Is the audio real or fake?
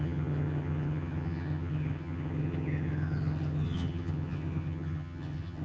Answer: fake